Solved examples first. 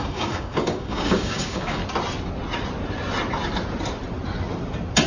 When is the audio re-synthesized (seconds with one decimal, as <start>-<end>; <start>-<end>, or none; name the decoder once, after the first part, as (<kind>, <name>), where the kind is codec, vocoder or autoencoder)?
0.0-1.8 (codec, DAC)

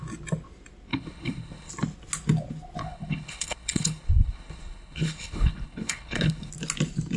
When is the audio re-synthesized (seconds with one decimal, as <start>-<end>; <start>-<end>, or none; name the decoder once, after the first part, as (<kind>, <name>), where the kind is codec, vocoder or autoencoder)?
0.9-1.7 (codec, HILCodec); 2.8-6.5

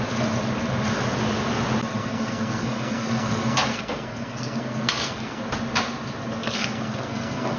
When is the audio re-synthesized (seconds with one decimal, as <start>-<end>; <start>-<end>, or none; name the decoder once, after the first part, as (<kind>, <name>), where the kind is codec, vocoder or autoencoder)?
2.0-5.4 (codec, SNAC); 6.4-7.6

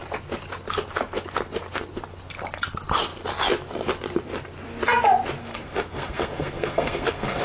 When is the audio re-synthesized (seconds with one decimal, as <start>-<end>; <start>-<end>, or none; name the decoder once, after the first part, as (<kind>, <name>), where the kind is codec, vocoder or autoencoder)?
5.4-7.4 (codec, SNAC)

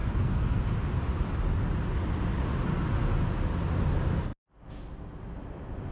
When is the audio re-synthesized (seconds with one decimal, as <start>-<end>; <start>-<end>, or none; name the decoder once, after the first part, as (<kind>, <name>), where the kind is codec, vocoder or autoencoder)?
0.0-0.7 (codec, SNAC)